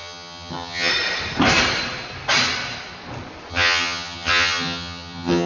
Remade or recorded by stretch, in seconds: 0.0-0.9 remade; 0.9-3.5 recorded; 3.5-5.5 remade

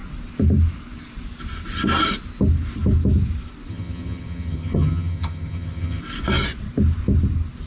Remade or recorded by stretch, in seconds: 0.0-3.7 recorded; 3.7-6.0 remade; 6.0-7.7 recorded

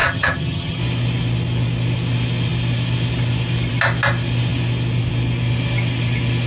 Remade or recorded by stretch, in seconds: 0.0-0.8 remade; 0.8-6.5 recorded

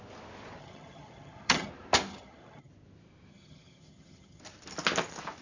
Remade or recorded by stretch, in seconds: 0.0-0.6 recorded; 0.6-1.7 remade; 1.7-2.1 recorded; 2.1-2.7 remade; 2.7-3.3 recorded; 3.3-4.4 remade; 4.4-5.4 recorded

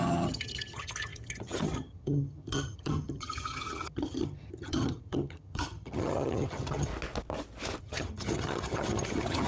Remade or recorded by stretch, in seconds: 0.0-6.9 remade; 6.9-7.8 recorded; 7.8-9.5 remade

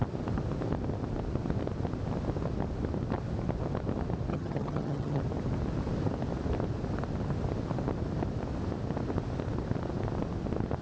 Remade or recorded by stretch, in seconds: 0.0-4.3 recorded; 4.3-5.2 remade; 5.2-10.8 recorded

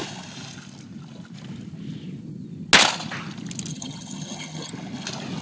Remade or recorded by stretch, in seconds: 0.0-3.7 recorded; 3.7-4.7 remade; 4.7-5.4 recorded